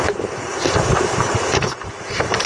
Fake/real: fake